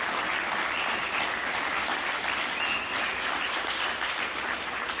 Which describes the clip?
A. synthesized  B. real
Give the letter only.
B